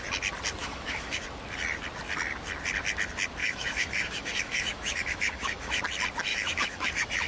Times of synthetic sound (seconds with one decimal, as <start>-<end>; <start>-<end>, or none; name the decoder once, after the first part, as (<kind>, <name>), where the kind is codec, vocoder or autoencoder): 0.6-1.2 (autoencoder, DAC-VAE); 3.4-5.8; 6.3-7.3